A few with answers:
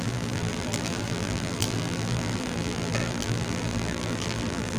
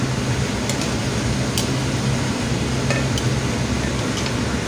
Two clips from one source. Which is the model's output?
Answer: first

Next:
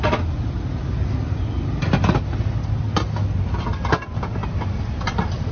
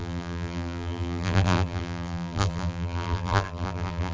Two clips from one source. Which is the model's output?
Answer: second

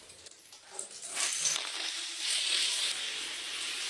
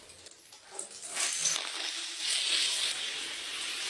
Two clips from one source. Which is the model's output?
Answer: first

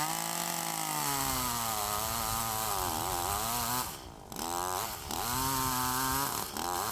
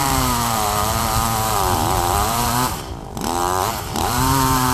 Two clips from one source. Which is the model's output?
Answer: second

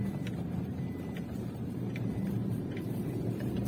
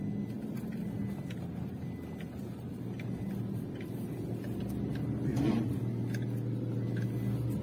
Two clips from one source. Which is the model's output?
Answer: first